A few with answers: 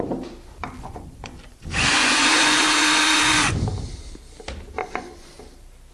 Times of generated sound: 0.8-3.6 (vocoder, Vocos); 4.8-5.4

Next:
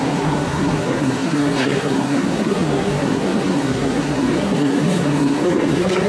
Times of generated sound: 0.0-6.1 (codec, SNAC)

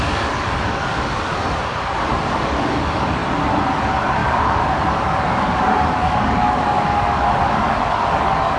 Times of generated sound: 0.0-1.4 (codec, DAC); 2.1-3.2; 3.7-8.6

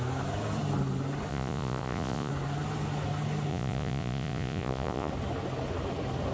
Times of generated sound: 1.3-2.3 (vocoder, Vocos); 3.5-5.1

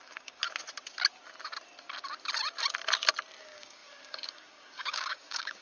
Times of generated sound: 0.0-0.4 (codec, DAC); 3.4-5.6

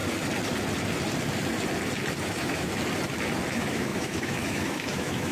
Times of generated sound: 2.2-2.7 (autoencoder, DAC-VAE); 3.5-5.3

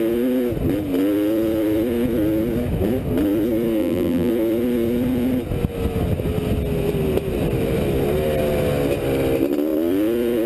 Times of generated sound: 3.8-4.3 (vocoder, BigVGAN v2)

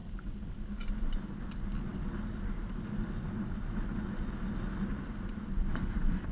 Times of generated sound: none